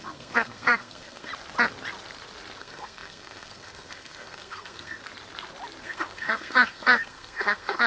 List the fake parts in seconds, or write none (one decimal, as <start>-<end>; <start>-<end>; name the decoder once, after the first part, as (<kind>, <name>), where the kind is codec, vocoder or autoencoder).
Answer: 0.0-1.3 (codec, SNAC); 2.6-5.0; 5.8-7.9